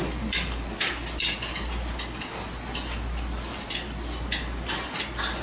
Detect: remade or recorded recorded